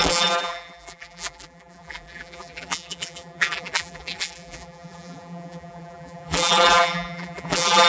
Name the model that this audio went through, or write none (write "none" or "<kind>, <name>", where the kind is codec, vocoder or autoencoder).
vocoder, BigVGAN v2